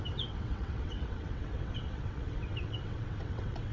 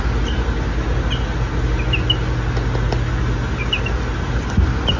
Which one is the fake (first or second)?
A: first